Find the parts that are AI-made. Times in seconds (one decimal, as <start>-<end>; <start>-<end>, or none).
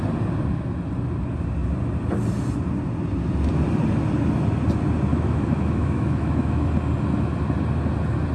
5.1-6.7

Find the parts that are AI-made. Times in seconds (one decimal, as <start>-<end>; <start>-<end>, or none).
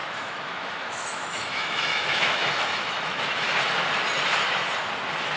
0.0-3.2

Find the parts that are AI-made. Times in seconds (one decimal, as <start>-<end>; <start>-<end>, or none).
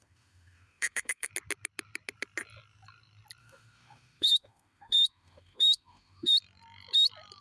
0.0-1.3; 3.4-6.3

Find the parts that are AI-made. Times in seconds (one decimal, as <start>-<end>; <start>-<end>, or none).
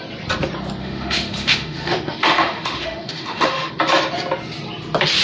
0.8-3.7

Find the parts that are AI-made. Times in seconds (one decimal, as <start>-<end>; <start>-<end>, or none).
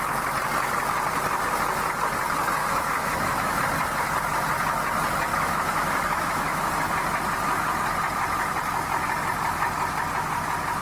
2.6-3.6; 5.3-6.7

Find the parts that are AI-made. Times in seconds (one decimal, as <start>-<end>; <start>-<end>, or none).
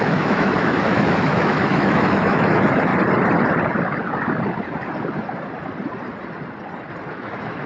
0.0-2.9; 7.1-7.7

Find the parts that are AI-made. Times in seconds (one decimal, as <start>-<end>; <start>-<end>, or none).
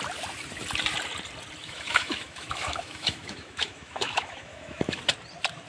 1.6-5.0